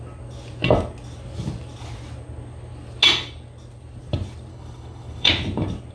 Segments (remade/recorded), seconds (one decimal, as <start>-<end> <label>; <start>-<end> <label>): 0.0-4.5 recorded; 4.5-5.3 remade; 5.3-5.9 recorded